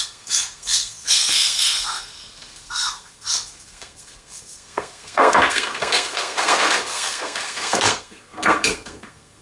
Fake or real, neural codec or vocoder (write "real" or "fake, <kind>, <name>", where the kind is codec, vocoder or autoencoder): fake, codec, SNAC